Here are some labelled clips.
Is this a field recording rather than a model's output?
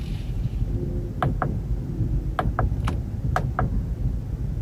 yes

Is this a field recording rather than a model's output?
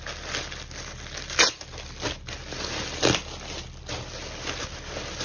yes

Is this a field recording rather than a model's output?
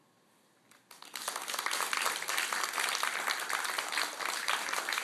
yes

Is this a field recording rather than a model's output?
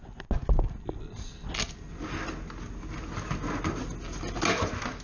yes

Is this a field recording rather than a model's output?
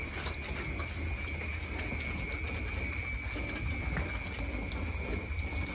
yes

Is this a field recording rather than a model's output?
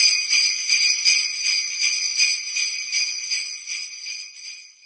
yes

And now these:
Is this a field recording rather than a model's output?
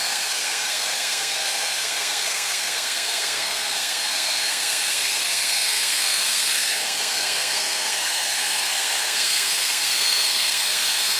no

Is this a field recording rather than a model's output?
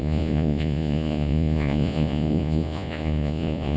no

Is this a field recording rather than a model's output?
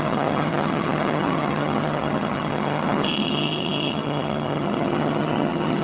no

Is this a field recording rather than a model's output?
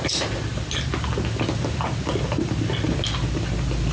yes